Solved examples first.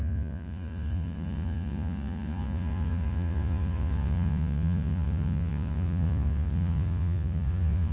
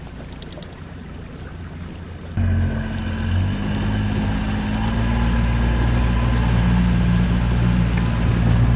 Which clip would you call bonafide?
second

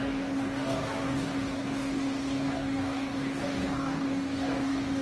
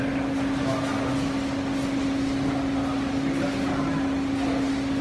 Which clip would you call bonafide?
second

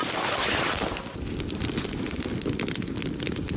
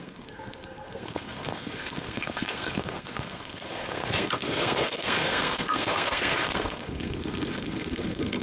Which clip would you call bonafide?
first